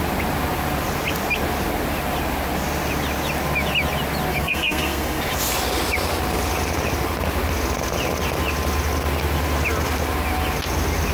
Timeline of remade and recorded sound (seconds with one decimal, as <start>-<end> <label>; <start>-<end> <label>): 0.0-4.3 recorded; 4.3-5.2 remade; 5.2-11.1 recorded

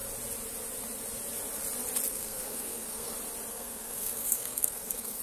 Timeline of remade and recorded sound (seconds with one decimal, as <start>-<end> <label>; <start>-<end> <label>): 0.0-2.1 recorded; 2.1-3.1 remade; 3.1-3.5 recorded; 3.5-5.2 remade

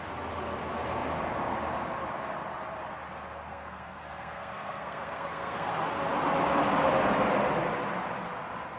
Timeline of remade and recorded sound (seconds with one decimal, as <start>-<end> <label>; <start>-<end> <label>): 0.0-3.5 recorded; 3.5-5.7 remade; 5.7-8.8 recorded

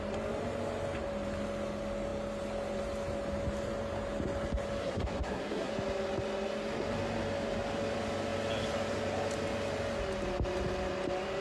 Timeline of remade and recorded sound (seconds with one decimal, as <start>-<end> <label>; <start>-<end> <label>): 0.0-4.8 recorded; 4.8-5.7 remade; 5.7-11.4 recorded

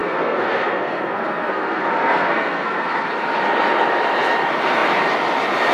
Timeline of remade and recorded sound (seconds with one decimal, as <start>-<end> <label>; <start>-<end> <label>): 0.0-3.1 remade; 3.1-5.7 recorded

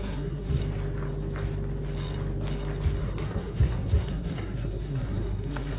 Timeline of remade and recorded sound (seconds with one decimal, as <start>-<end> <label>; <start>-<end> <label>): 0.0-0.6 remade; 0.6-3.0 recorded; 3.0-5.8 remade

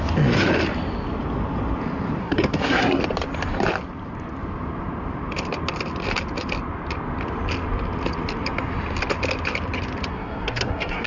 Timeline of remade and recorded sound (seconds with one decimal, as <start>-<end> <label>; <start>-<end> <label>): 0.0-2.2 recorded; 2.2-3.0 remade; 3.0-10.1 recorded; 10.1-11.1 remade